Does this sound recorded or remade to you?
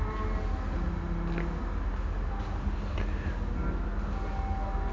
recorded